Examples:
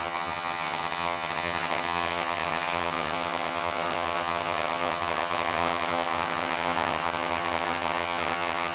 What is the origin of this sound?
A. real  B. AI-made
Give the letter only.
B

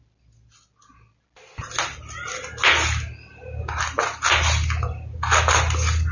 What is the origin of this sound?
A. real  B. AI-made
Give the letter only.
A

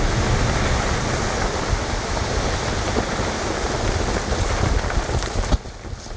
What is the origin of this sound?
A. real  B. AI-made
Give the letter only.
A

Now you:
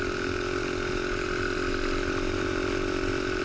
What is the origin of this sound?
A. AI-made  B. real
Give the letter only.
B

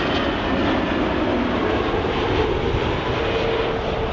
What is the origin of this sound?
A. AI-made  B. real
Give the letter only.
B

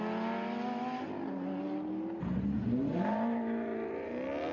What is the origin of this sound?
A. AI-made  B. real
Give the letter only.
B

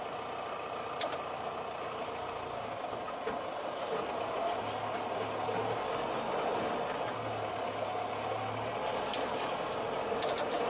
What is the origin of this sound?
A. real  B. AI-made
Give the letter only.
A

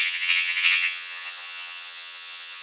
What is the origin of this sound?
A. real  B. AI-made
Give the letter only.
B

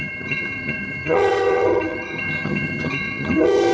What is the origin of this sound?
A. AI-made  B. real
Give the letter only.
A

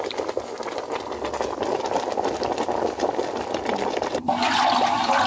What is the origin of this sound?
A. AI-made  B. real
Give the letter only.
B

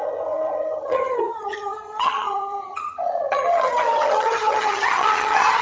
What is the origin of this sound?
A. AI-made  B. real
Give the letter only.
A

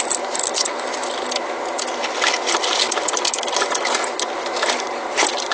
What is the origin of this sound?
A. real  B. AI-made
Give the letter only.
A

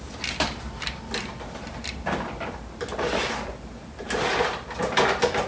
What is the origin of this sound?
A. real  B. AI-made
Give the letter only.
A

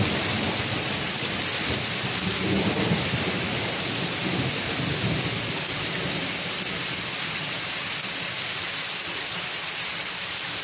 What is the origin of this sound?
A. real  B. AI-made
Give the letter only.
A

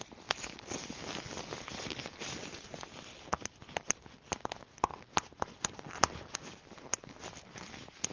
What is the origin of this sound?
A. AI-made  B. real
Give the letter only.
B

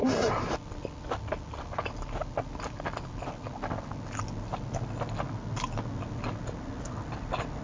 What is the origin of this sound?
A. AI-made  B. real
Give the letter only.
B